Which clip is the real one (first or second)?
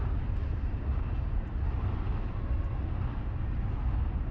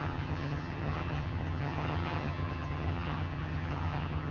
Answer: first